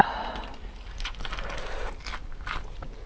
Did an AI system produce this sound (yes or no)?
no